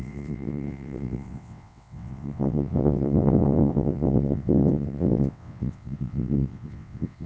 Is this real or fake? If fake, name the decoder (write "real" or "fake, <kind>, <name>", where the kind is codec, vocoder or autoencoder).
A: fake, vocoder, WaveNeXt